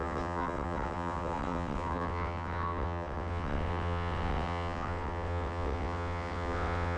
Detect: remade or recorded remade